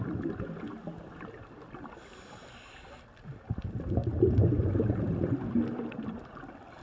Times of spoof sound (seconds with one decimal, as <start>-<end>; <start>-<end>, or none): none